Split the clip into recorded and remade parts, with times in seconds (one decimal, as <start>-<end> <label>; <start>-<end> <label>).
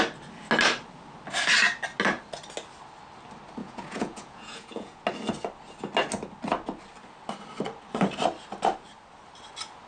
0.0-3.6 recorded; 3.6-5.0 remade; 5.0-9.9 recorded